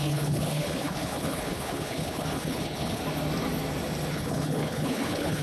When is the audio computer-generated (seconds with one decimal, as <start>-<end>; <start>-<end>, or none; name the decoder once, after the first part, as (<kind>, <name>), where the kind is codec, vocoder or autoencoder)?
0.0-3.0 (codec, HILCodec); 4.1-5.4